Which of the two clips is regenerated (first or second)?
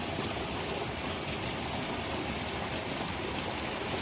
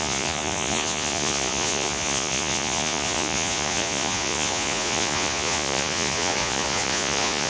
second